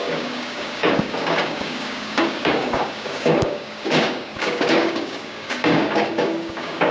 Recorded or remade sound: remade